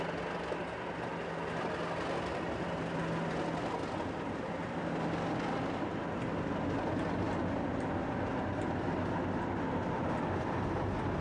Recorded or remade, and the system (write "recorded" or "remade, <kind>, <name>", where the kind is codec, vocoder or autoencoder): recorded